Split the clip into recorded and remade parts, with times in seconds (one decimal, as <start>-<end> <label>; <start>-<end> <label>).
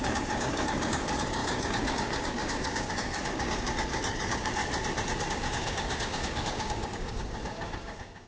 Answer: 0.0-4.6 remade; 4.6-5.2 recorded; 5.2-8.3 remade